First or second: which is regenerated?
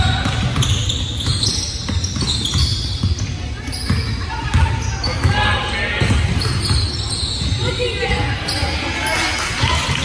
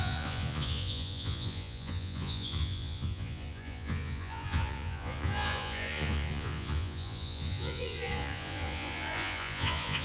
second